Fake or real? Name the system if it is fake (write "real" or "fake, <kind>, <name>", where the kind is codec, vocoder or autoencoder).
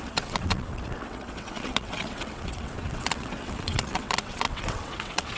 fake, vocoder, WaveNeXt